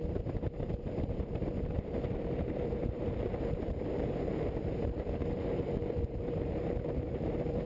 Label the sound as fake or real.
fake